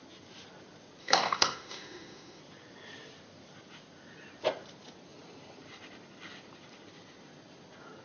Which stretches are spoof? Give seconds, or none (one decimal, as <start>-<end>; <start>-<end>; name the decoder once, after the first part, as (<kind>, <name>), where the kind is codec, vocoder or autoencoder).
1.0-2.4 (autoencoder, DAC-VAE)

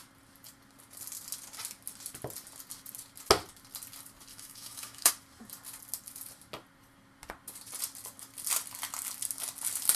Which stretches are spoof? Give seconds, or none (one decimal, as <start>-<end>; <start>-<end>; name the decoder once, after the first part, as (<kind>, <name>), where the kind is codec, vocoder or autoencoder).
4.3-5.1 (autoencoder, DAC-VAE)